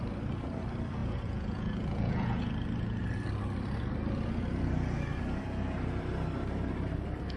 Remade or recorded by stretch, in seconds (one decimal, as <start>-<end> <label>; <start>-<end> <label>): 0.0-1.0 recorded; 1.0-2.5 remade; 2.5-7.4 recorded